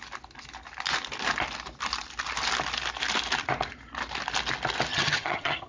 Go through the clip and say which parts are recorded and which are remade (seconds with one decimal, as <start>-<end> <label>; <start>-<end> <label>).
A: 0.0-4.9 recorded; 4.9-5.7 remade